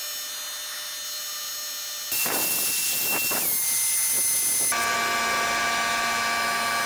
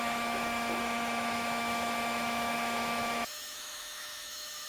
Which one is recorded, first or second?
first